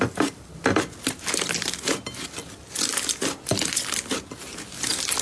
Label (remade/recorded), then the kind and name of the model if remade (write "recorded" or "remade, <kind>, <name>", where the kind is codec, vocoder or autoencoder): recorded